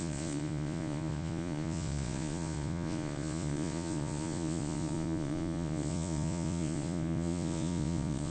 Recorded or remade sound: remade